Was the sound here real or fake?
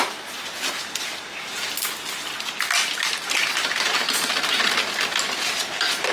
real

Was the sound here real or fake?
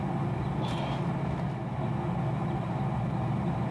real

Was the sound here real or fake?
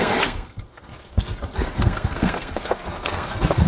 fake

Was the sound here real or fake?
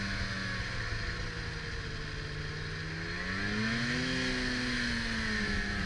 real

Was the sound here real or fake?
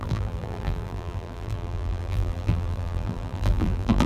fake